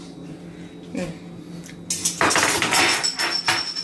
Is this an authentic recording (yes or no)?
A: yes